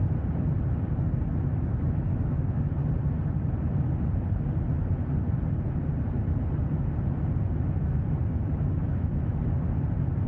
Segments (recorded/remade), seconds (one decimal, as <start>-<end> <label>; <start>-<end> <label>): 0.0-2.1 recorded; 2.1-2.6 remade; 2.6-10.3 recorded

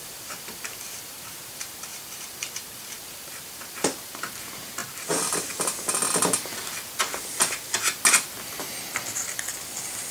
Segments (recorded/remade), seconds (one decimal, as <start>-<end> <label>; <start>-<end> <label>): 0.0-4.8 remade; 4.8-10.1 recorded

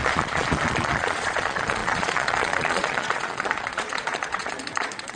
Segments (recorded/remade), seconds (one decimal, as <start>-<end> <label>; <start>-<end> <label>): 0.0-5.2 remade

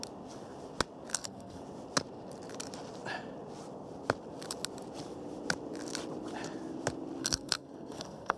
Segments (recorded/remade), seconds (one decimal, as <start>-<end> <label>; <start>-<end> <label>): 0.0-1.1 recorded; 1.1-1.6 remade; 1.6-7.2 recorded; 7.2-8.4 remade

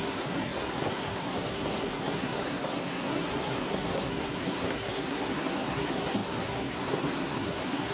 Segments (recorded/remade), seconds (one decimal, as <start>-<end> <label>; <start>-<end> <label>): 0.0-7.9 remade

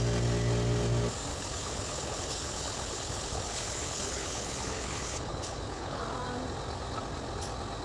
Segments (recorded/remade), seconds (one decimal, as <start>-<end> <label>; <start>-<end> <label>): 0.0-1.3 recorded; 1.3-6.0 remade; 6.0-7.8 recorded

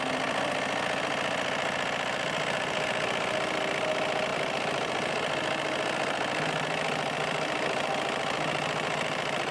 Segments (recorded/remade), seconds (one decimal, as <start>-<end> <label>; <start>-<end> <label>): 0.0-4.3 recorded; 4.3-9.5 remade